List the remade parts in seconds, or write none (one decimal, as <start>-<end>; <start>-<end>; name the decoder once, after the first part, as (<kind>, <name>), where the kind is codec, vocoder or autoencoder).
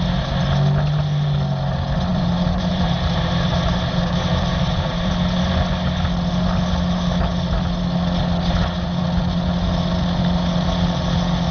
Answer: 2.1-5.1 (vocoder, BigVGAN v2)